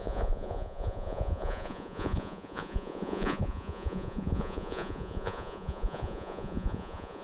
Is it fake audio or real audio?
fake